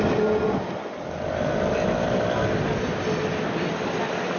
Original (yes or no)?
yes